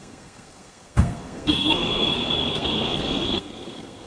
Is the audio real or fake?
fake